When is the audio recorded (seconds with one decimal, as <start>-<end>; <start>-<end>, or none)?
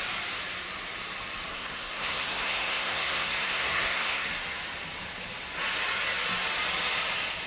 0.0-1.5; 4.3-7.5